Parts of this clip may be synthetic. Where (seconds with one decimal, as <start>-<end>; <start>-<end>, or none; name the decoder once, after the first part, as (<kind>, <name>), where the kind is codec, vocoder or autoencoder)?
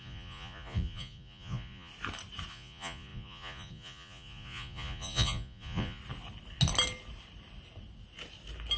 0.0-1.9 (vocoder, Vocos); 2.5-6.0